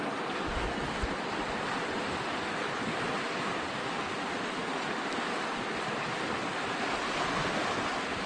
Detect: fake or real real